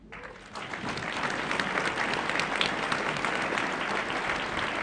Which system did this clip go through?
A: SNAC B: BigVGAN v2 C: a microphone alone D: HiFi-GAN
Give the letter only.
C